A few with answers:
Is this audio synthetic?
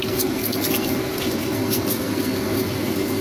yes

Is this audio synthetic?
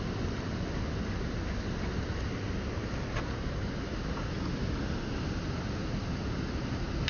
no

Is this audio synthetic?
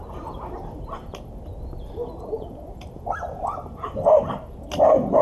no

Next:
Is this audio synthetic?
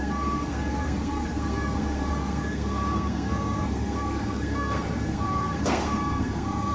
yes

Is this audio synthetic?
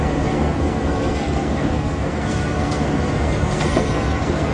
yes